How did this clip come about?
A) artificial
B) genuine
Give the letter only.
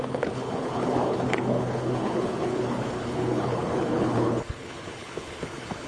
A